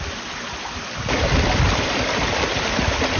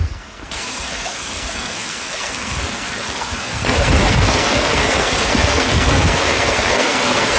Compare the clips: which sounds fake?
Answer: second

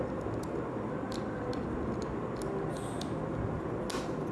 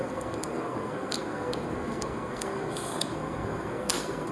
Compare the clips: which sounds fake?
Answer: second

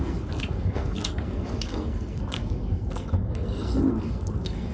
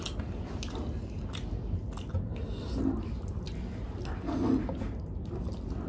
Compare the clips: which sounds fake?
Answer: first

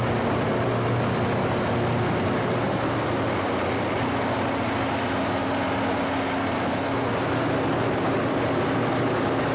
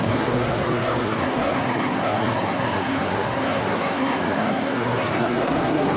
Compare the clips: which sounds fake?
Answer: second